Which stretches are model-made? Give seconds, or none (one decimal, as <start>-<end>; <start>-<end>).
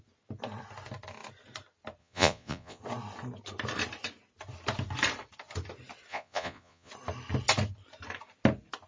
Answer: 2.0-2.8; 6.1-6.9